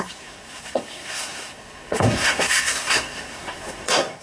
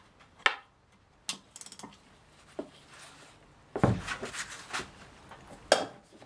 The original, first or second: second